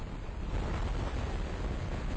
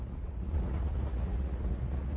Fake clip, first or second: second